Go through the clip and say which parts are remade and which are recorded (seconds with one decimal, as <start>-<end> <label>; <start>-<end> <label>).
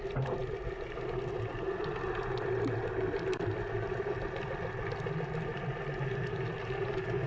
0.0-7.3 recorded